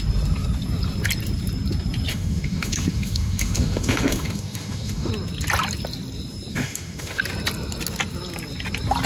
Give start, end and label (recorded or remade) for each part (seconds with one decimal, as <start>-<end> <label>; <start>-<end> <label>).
0.0-2.1 recorded; 2.1-5.1 remade; 5.1-6.5 recorded; 6.5-7.2 remade; 7.2-9.1 recorded